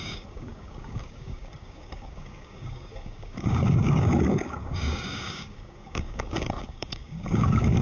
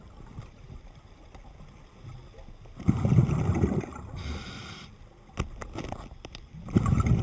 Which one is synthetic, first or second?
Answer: first